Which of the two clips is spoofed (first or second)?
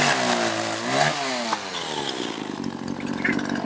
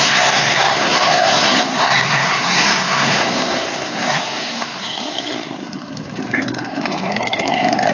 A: second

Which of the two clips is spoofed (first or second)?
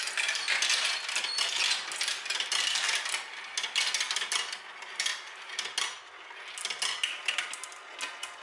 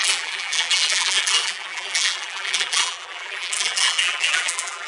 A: second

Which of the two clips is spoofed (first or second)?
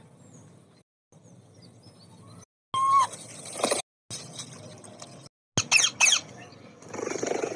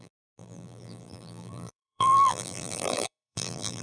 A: second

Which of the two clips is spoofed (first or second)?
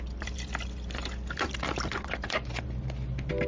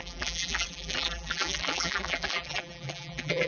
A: second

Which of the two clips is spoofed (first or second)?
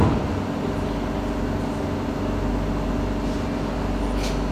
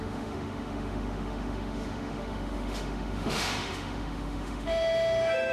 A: second